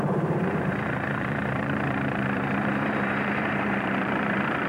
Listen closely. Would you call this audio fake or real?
fake